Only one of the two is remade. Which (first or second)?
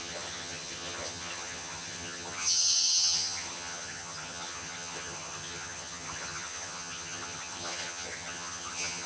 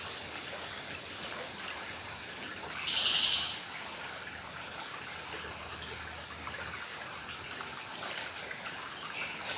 first